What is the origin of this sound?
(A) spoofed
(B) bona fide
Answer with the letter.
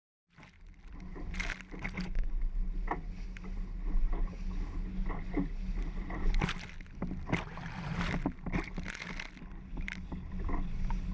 B